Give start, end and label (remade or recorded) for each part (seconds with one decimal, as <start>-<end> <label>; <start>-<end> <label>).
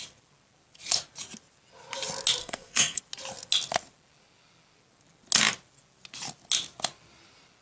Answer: 0.0-2.4 recorded; 2.4-3.0 remade; 3.0-7.6 recorded